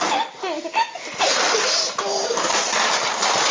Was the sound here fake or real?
real